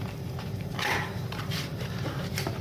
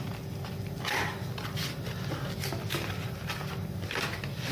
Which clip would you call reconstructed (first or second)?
first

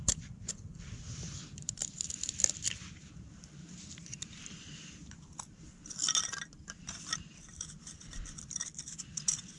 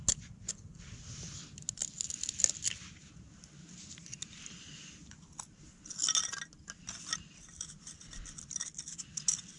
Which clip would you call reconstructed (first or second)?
first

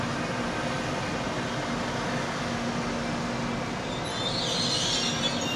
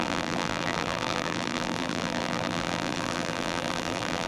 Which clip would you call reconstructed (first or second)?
second